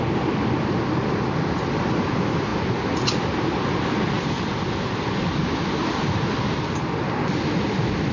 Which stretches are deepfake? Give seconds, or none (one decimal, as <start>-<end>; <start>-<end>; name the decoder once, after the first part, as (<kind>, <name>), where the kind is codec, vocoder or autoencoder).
none